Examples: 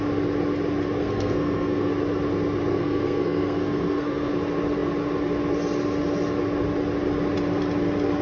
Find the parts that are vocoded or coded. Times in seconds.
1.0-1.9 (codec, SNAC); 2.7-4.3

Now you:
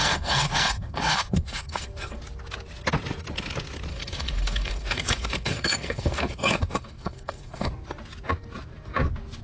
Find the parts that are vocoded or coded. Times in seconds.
0.0-2.2 (codec, SNAC); 3.9-7.7

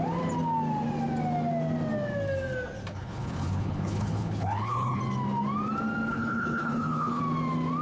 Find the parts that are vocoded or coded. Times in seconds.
2.9-5.0 (codec, HILCodec); 6.1-7.2

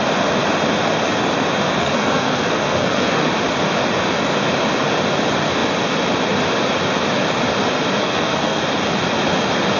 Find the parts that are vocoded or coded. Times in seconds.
1.8-3.3 (codec, SNAC); 8.0-8.6

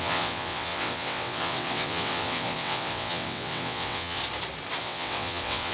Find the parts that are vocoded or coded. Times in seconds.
0.0-4.2 (vocoder, WaveNeXt); 4.8-5.7